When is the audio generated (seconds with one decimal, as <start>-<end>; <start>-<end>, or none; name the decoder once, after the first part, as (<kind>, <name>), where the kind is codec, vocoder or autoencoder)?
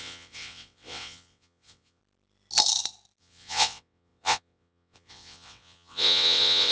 0.0-2.0 (vocoder, WaveNeXt); 3.2-6.7